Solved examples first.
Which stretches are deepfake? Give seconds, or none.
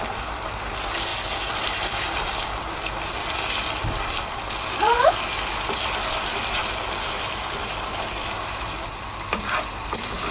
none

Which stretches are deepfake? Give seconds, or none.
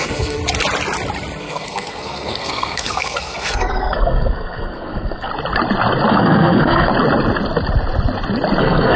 0.0-0.4 (codec, SNAC); 1.4-5.3; 6.1-6.9; 8.6-9.0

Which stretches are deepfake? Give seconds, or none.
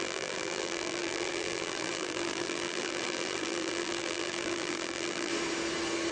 0.0-5.3 (vocoder, BigVGAN v2)